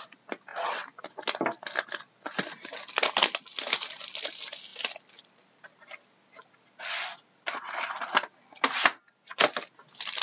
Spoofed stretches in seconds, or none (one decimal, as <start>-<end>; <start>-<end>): none